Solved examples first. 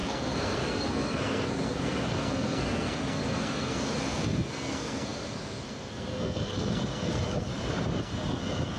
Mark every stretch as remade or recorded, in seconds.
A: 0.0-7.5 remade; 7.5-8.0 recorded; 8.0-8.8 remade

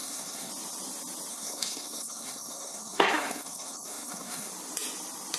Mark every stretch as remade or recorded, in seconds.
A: 0.0-0.5 remade; 0.5-1.3 recorded; 1.3-4.5 remade; 4.5-5.4 recorded

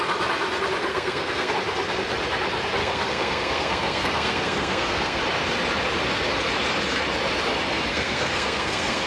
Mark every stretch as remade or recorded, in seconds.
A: 0.0-0.9 recorded; 0.9-1.5 remade; 1.5-2.8 recorded; 2.8-5.2 remade; 5.2-7.9 recorded; 7.9-9.1 remade

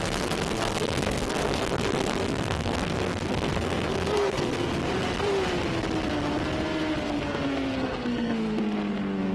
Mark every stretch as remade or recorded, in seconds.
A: 0.0-4.7 remade; 4.7-7.0 recorded; 7.0-9.3 remade